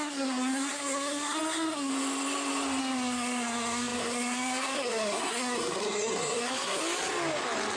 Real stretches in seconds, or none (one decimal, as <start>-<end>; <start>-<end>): 1.9-2.8; 6.8-7.8